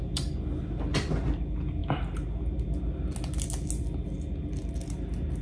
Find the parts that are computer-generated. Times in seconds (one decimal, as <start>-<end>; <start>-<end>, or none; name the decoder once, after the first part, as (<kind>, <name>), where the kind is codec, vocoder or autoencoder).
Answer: none